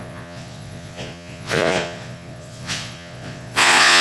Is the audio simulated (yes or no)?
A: yes